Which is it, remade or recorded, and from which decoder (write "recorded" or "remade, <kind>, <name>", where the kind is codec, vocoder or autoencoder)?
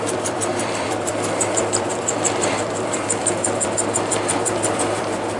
remade, vocoder, BigVGAN v2